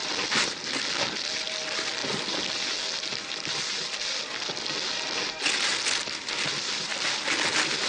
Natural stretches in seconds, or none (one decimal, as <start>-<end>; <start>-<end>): 0.5-6.9